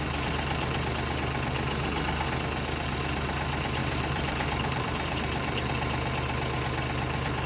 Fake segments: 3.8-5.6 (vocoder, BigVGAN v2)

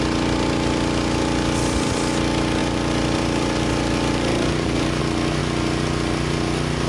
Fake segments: 2.6-5.0 (vocoder, BigVGAN v2)

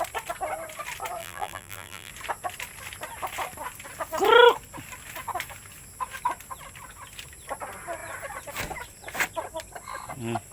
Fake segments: 1.2-2.1 (vocoder, BigVGAN v2)